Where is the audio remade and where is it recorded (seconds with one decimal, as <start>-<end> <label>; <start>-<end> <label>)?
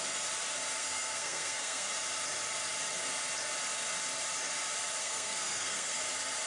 0.0-0.8 recorded; 0.8-1.9 remade; 1.9-5.0 recorded; 5.0-6.0 remade; 6.0-6.5 recorded